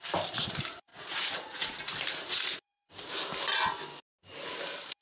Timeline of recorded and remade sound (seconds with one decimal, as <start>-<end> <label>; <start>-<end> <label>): 0.0-0.9 recorded; 0.9-1.9 remade; 1.9-5.0 recorded